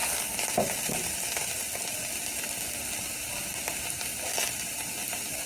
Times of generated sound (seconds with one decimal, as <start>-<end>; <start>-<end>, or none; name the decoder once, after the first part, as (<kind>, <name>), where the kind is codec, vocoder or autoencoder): none